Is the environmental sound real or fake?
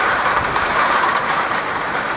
fake